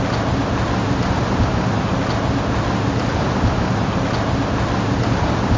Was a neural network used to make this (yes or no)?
no